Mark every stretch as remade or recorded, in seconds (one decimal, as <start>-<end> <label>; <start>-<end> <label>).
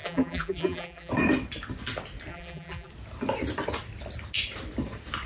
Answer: 0.0-1.1 remade; 1.1-2.3 recorded; 2.3-2.9 remade; 2.9-5.3 recorded